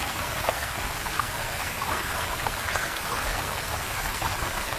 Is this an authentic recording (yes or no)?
no